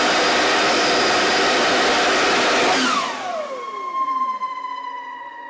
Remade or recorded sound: recorded